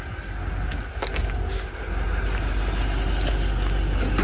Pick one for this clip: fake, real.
real